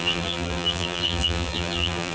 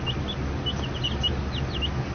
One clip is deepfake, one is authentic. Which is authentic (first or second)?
second